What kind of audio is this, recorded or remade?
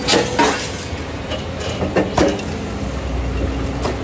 recorded